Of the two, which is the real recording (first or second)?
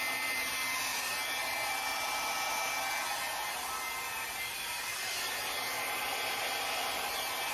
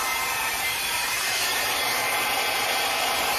first